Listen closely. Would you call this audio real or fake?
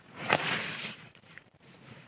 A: fake